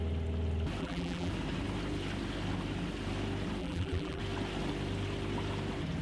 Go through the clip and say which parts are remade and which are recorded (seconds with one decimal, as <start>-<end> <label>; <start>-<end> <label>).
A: 0.0-0.8 recorded; 0.8-1.3 remade; 1.3-3.6 recorded; 3.6-4.2 remade; 4.2-6.0 recorded